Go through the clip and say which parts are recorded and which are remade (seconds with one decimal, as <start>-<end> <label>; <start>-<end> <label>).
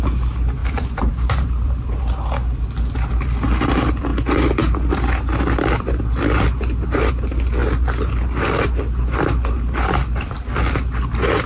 0.0-0.6 recorded; 0.6-1.7 remade; 1.7-11.5 recorded